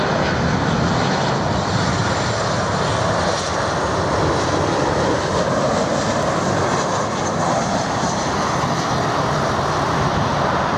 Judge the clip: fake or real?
real